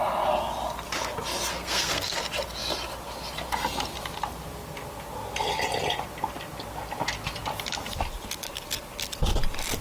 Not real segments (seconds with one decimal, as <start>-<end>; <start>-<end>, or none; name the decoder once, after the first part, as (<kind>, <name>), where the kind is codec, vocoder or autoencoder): 1.5-2.2 (codec, SNAC)